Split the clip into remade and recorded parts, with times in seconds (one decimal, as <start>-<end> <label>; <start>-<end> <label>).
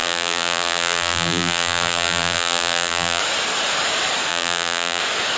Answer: 0.0-3.2 remade; 3.2-4.3 recorded; 4.3-5.0 remade; 5.0-5.4 recorded